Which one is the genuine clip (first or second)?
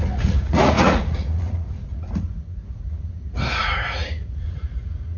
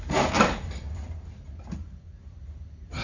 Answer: second